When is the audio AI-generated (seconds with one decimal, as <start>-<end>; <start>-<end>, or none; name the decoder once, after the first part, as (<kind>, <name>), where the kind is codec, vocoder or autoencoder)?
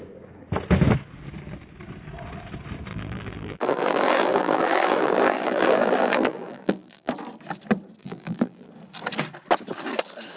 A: 2.9-7.1 (vocoder, BigVGAN v2); 8.0-8.7